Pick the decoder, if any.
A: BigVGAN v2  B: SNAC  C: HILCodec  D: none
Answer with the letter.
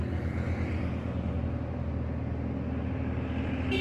D